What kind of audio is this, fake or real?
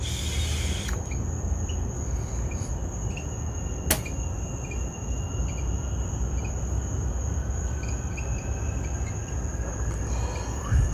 real